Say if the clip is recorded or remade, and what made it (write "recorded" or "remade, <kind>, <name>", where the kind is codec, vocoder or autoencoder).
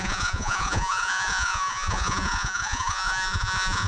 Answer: remade, vocoder, Vocos